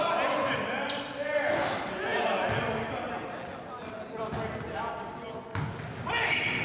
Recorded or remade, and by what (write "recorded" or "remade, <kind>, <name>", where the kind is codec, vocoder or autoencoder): recorded